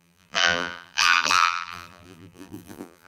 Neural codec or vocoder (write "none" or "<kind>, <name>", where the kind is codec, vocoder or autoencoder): vocoder, BigVGAN v2